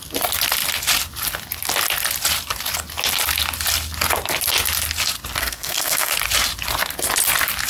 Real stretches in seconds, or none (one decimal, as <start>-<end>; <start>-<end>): 0.0-5.4; 6.1-7.7